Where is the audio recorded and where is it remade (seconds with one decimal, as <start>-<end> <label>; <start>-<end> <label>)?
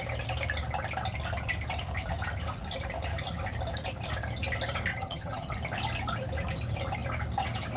0.0-4.9 recorded; 4.9-5.5 remade; 5.5-7.8 recorded